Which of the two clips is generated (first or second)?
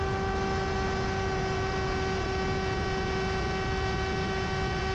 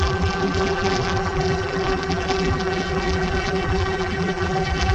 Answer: second